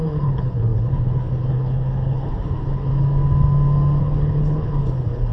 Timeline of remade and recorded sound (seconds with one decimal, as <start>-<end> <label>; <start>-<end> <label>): 0.0-2.9 remade; 2.9-4.0 recorded; 4.0-5.3 remade